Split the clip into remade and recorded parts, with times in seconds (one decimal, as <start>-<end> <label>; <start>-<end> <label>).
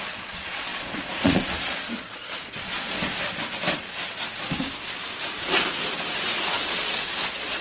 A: 0.0-3.0 remade; 3.0-6.7 recorded; 6.7-7.6 remade